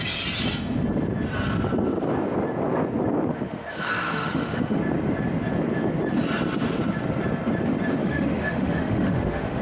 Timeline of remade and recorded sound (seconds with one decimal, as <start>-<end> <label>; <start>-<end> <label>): 0.0-3.3 recorded; 3.3-4.8 remade; 4.8-8.0 recorded; 8.0-9.6 remade